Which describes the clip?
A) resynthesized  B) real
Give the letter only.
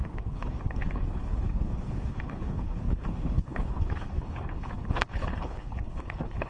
A